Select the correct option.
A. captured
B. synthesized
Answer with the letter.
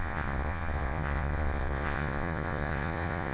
B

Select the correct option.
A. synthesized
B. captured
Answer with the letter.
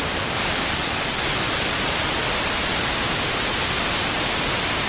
B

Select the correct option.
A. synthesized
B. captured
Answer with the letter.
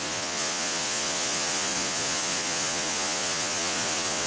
A